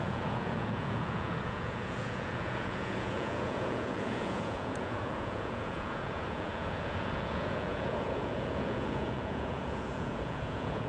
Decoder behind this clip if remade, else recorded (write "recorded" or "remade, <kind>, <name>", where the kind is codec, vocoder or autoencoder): remade, vocoder, Vocos